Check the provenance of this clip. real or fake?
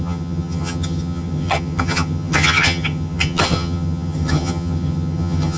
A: fake